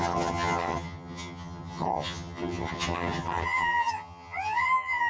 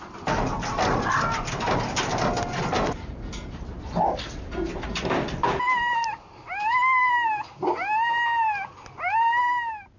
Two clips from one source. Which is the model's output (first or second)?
first